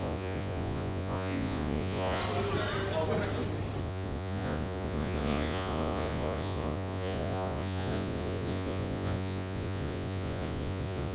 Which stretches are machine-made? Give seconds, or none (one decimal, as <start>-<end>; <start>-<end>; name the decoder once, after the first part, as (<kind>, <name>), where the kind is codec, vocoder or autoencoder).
0.0-2.2 (vocoder, Vocos); 3.8-11.1